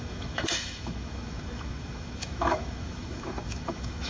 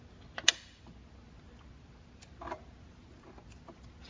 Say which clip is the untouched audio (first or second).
second